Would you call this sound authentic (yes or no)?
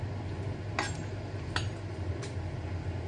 yes